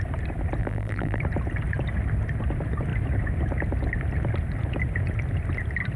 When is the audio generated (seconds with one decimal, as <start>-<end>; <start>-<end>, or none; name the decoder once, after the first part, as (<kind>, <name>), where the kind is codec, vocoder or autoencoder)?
0.6-1.2 (vocoder, BigVGAN v2)